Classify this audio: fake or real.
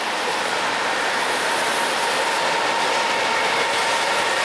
real